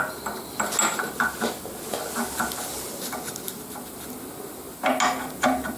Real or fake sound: real